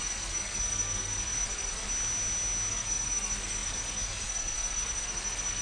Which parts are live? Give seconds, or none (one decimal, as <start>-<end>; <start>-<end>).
1.9-2.7